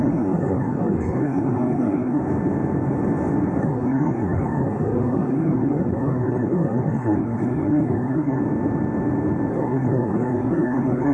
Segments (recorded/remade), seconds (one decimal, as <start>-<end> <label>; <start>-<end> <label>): 0.0-2.2 remade; 2.2-3.6 recorded; 3.6-8.4 remade; 8.4-9.5 recorded; 9.5-11.1 remade